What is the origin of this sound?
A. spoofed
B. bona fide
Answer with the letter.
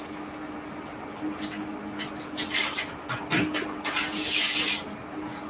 B